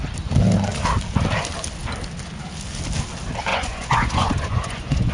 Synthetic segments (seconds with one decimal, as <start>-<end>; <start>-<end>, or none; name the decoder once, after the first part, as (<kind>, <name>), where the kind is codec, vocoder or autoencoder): 3.5-5.1 (vocoder, Vocos)